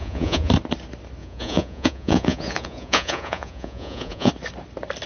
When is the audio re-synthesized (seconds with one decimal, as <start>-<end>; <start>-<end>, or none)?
0.0-0.5; 1.2-4.3